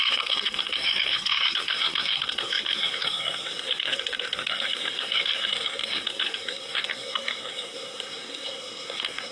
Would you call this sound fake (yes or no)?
yes